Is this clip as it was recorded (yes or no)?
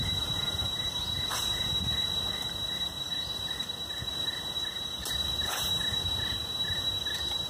yes